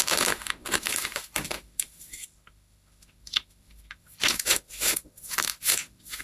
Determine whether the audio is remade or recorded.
remade